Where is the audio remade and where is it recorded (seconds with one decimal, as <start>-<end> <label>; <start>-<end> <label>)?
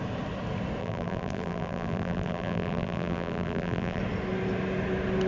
0.0-0.8 recorded; 0.8-4.0 remade; 4.0-5.3 recorded